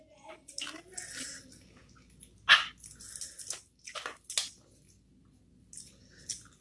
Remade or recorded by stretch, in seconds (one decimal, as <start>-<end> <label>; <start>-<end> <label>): 0.0-6.6 recorded